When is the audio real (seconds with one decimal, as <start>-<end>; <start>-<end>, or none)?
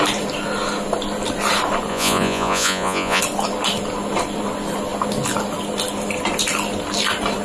0.0-1.9; 3.2-7.4